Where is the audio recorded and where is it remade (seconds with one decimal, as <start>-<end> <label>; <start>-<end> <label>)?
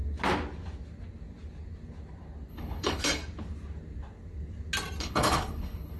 0.0-2.5 recorded; 2.5-3.2 remade; 3.2-5.0 recorded; 5.0-6.0 remade